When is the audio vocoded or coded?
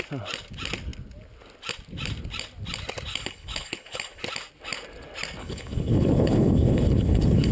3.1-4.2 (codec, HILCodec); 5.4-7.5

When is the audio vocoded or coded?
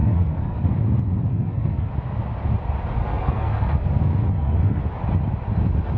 0.0-0.7 (codec, SNAC); 1.3-1.9; 3.0-4.8